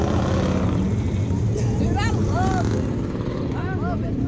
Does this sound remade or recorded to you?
recorded